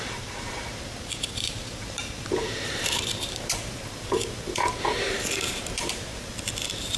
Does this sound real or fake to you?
fake